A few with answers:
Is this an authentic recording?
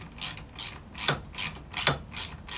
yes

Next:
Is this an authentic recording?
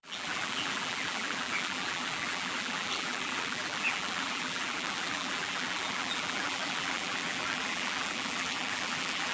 no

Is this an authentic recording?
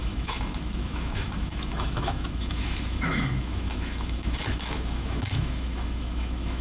no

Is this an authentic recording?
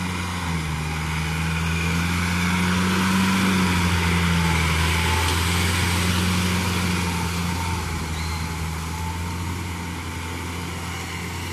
yes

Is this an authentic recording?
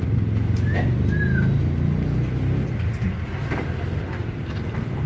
yes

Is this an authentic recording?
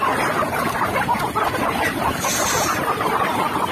no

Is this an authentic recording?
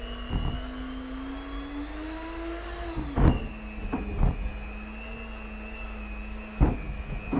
yes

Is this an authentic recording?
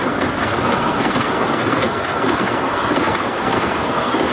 no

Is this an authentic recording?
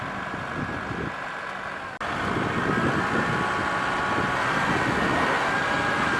yes